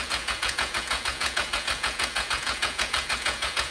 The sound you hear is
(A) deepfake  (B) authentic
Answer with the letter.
A